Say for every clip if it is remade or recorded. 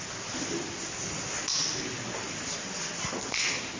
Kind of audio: recorded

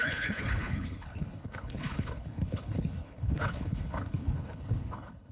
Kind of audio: remade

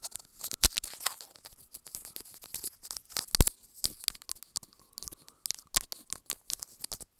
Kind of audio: recorded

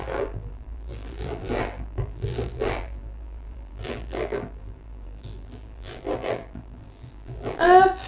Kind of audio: remade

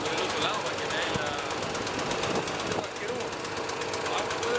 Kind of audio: recorded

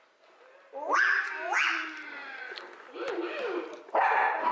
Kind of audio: recorded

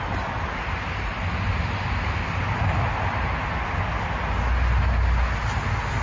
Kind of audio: recorded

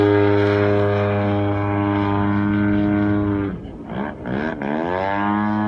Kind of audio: recorded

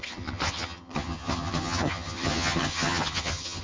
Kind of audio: remade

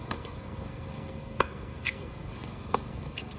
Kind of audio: remade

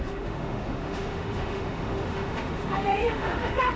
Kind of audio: remade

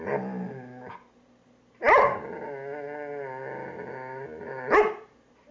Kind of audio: recorded